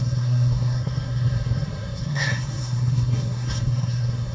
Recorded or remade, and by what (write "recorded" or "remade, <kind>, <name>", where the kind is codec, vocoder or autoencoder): remade, codec, SNAC